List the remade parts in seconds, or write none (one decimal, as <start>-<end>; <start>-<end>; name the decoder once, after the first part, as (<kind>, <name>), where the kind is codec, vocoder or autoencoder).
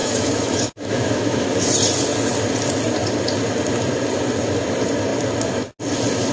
0.0-1.7 (autoencoder, DAC-VAE)